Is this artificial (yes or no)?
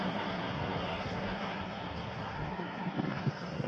yes